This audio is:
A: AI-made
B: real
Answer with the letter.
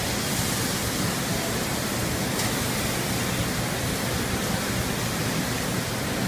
B